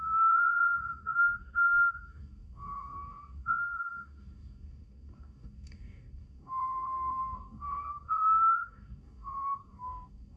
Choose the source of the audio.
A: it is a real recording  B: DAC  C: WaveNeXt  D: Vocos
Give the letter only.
B